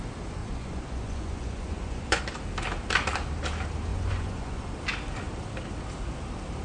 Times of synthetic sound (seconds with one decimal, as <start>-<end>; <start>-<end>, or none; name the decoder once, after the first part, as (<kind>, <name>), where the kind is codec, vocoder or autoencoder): 0.4-2.2 (vocoder, Vocos); 3.9-4.6